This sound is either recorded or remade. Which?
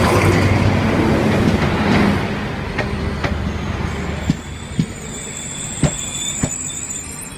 recorded